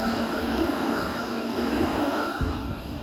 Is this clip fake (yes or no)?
yes